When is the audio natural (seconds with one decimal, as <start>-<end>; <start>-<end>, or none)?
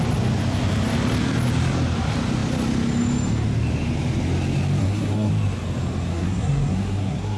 0.0-4.8; 5.3-6.1